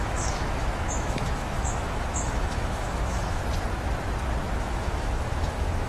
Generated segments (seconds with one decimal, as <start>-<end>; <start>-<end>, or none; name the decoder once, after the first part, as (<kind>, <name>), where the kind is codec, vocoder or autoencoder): 0.0-3.4 (autoencoder, DAC-VAE); 4.6-5.9